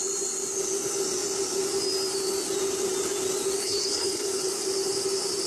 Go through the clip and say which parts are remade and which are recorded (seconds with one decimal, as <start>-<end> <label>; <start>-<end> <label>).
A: 0.0-3.6 recorded; 3.6-4.4 remade; 4.4-5.5 recorded